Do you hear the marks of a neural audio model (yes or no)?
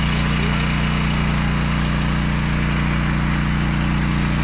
no